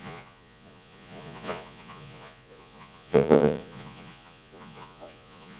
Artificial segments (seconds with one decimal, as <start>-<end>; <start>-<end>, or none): 0.0-5.6